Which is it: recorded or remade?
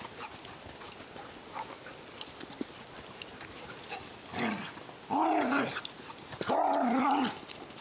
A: recorded